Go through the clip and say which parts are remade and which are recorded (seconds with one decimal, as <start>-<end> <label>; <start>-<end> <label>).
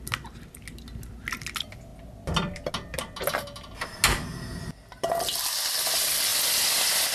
0.0-7.1 recorded